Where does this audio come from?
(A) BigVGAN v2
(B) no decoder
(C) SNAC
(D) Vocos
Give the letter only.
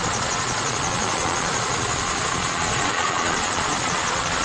D